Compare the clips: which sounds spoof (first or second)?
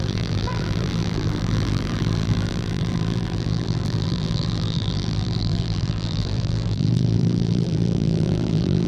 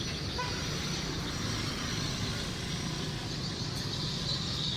first